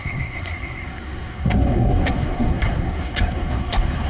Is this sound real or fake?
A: fake